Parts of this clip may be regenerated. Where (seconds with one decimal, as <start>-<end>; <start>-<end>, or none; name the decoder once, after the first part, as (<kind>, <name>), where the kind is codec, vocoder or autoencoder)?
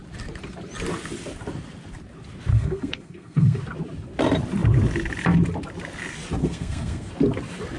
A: 2.5-3.6 (codec, SNAC); 6.4-7.1